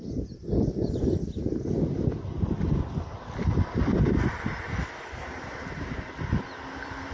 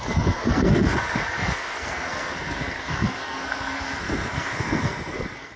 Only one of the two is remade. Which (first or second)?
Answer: second